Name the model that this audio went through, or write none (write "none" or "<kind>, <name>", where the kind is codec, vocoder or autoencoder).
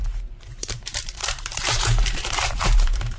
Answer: vocoder, BigVGAN v2